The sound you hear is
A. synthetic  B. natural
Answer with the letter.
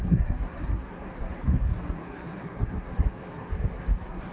A